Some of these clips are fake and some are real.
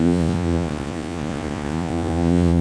fake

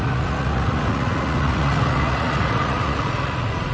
fake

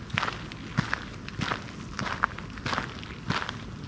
real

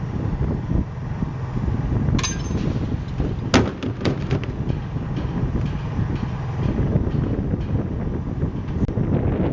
real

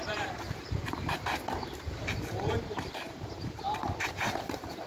fake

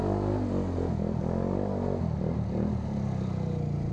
real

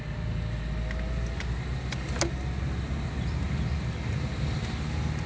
real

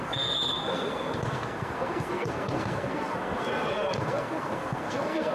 fake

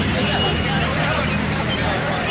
real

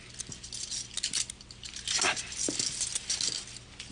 real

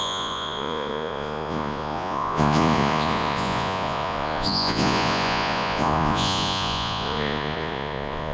fake